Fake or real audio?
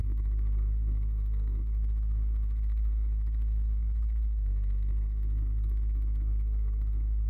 fake